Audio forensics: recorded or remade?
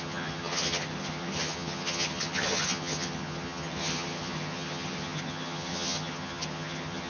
remade